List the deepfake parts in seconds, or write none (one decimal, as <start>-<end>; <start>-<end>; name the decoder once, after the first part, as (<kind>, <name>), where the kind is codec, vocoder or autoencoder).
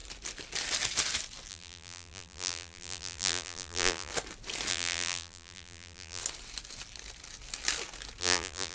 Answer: 1.5-4.1 (vocoder, BigVGAN v2); 4.7-6.2; 8.2-8.7